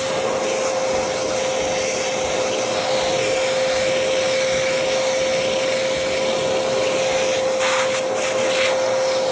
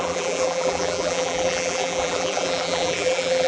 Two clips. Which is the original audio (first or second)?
first